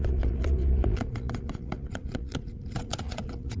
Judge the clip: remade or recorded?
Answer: remade